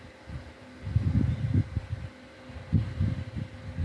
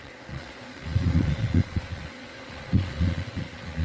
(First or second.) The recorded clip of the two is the first